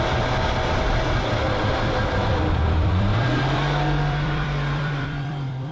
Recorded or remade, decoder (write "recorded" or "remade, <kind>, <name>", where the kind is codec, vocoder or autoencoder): remade, vocoder, BigVGAN v2